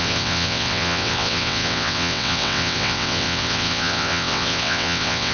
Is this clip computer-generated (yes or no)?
yes